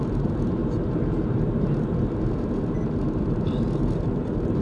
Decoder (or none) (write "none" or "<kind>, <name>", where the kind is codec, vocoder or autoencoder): vocoder, BigVGAN v2